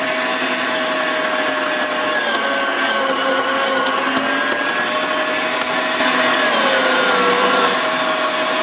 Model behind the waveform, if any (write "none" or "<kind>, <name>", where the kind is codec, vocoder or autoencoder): none